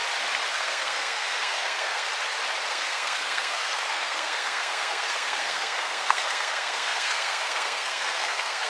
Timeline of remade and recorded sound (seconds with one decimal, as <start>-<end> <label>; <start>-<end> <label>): 0.0-0.5 recorded; 0.5-2.1 remade; 2.1-2.7 recorded; 2.7-8.7 remade